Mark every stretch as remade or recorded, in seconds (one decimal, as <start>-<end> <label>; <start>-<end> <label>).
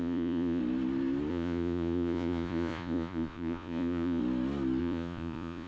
0.0-0.6 remade; 0.6-1.3 recorded; 1.3-4.2 remade; 4.2-4.8 recorded; 4.8-5.7 remade